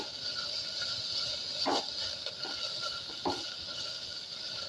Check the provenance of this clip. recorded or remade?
recorded